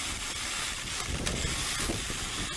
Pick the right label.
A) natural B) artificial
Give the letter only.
A